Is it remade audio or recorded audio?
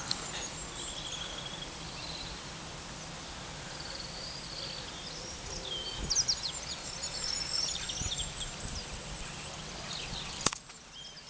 recorded